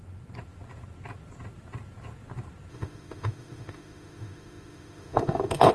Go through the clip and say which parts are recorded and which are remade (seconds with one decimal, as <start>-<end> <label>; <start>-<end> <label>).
0.0-2.7 recorded; 2.7-5.7 remade